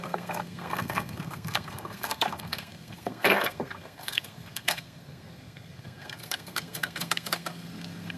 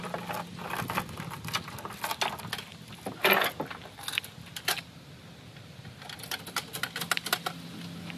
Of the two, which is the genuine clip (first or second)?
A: second